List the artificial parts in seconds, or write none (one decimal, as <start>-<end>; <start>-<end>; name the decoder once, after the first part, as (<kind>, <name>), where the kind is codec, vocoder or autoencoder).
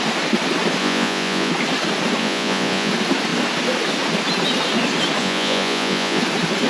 0.8-1.5 (vocoder, Vocos); 2.2-2.9; 5.2-6.2